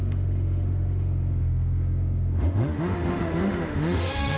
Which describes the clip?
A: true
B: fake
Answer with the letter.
B